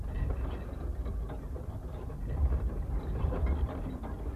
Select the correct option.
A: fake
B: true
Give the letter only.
B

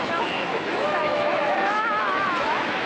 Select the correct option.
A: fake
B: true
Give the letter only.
A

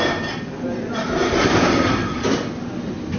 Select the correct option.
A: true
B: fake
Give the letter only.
A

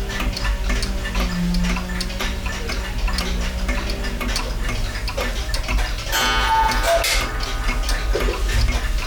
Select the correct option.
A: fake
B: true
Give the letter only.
B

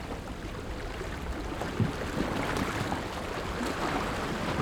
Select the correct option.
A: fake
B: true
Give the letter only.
B